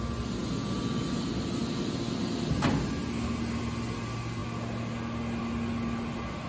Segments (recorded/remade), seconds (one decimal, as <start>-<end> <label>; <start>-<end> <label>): 0.0-6.5 recorded